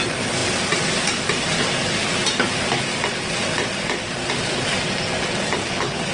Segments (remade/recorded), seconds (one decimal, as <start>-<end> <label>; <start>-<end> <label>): 0.0-5.6 recorded; 5.6-6.1 remade